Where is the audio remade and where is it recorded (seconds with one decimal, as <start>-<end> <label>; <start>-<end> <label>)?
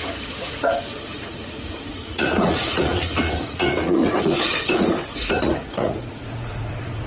0.0-7.1 remade